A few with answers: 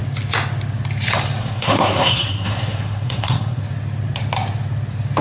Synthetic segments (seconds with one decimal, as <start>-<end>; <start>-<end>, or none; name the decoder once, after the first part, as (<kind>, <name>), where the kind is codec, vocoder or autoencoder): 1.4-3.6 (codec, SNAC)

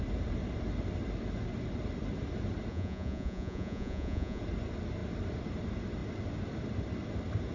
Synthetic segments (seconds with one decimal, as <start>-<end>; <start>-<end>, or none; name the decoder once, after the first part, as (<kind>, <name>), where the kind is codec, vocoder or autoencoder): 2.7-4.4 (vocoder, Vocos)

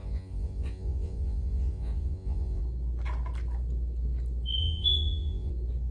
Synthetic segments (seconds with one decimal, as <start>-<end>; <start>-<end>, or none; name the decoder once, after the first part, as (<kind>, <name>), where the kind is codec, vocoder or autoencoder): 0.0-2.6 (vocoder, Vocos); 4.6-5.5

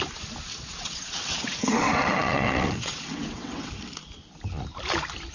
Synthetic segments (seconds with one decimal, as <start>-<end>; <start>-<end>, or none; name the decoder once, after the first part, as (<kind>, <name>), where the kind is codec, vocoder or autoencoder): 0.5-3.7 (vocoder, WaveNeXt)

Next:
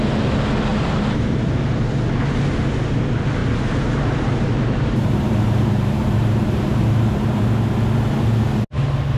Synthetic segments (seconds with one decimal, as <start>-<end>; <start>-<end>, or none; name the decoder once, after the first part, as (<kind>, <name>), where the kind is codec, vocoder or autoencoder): 0.7-1.8 (vocoder, BigVGAN v2); 3.4-7.5

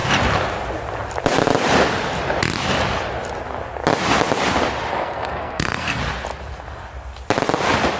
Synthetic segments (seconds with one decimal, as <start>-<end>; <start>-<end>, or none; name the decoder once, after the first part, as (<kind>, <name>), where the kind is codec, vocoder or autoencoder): 4.9-6.0 (codec, SNAC)

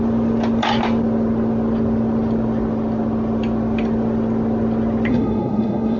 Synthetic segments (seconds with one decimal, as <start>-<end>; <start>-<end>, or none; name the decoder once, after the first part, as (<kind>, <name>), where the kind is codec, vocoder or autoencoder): 5.1-6.0 (codec, SNAC)